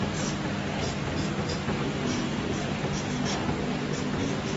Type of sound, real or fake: real